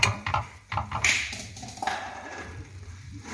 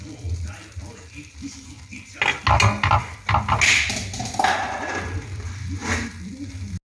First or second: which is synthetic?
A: first